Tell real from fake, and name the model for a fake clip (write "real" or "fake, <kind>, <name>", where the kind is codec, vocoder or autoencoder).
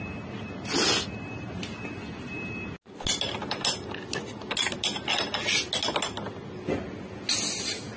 real